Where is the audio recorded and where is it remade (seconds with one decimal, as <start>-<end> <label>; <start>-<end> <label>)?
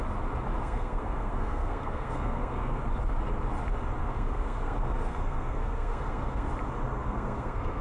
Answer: 0.0-0.6 recorded; 0.6-2.8 remade; 2.8-4.0 recorded; 4.0-6.5 remade; 6.5-7.0 recorded; 7.0-7.8 remade